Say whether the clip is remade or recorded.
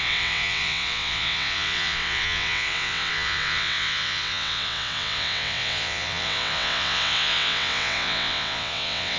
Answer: remade